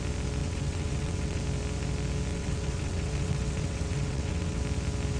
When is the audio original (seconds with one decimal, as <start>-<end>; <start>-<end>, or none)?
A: 0.0-0.4; 1.4-2.3; 4.6-5.2